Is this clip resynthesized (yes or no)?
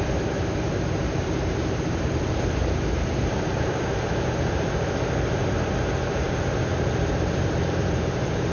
yes